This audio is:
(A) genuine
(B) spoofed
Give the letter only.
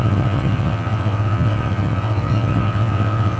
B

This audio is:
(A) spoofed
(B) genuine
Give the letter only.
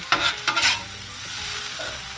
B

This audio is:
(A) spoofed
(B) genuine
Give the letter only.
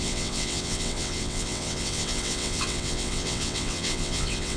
A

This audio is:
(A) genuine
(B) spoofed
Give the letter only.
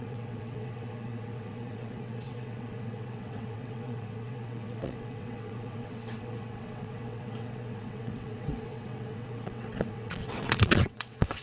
B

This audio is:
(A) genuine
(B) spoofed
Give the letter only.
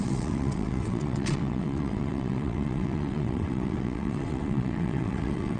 B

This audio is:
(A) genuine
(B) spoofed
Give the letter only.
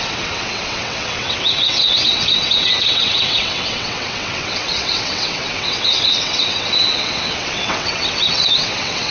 B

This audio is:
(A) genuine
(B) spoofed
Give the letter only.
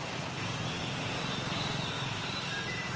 A